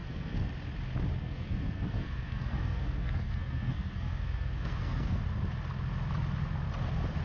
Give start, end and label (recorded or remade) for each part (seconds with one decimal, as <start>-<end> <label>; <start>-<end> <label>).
0.0-0.5 remade; 0.5-1.2 recorded; 1.2-5.2 remade; 5.2-7.2 recorded